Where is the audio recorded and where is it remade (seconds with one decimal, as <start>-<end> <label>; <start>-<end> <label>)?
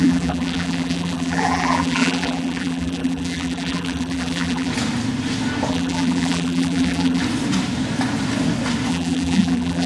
0.0-4.7 remade; 4.7-5.7 recorded; 5.7-7.2 remade; 7.2-8.9 recorded; 8.9-9.9 remade